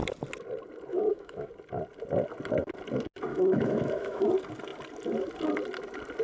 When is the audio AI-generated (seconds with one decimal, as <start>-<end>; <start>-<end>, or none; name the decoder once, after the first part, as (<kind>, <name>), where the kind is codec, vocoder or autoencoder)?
0.9-1.5 (autoencoder, DAC-VAE); 3.3-4.3

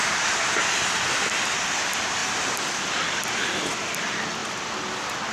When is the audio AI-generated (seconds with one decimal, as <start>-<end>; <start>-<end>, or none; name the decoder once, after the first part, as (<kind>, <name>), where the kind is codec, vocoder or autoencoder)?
2.2-3.7 (vocoder, BigVGAN v2)

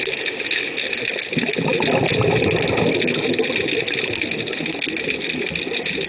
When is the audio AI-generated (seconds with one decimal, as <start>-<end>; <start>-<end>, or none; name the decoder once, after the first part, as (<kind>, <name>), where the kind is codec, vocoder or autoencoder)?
none

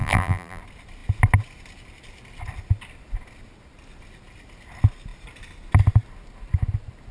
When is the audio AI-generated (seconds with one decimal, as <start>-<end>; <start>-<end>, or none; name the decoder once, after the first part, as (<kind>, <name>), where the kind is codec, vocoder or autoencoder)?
0.0-0.6 (vocoder, BigVGAN v2)